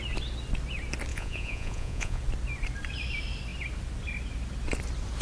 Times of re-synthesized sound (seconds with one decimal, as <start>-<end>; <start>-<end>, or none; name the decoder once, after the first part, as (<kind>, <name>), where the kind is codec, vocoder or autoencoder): 1.1-2.2 (vocoder, Vocos)